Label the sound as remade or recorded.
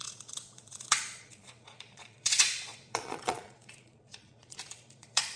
remade